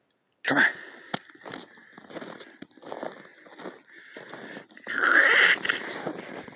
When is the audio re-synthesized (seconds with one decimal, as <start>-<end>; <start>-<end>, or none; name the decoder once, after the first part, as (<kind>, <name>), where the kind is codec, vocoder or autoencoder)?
none